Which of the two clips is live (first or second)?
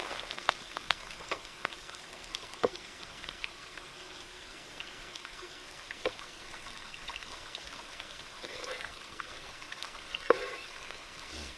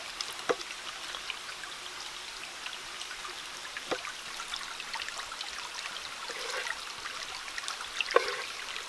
second